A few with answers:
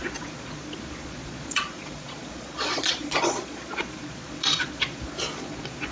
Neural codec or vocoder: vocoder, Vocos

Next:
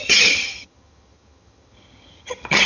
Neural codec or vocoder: vocoder, HiFi-GAN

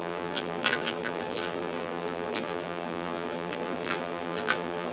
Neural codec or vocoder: vocoder, BigVGAN v2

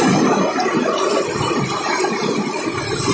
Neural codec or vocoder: none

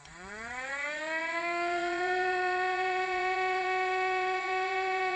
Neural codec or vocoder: vocoder, WaveNeXt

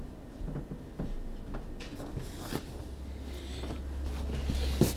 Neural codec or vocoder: none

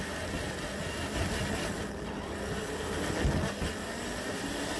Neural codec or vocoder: none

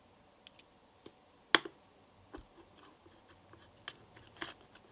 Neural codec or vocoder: none